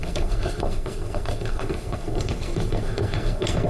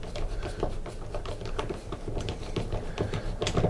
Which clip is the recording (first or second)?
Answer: second